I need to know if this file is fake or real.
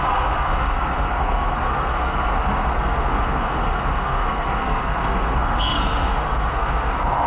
fake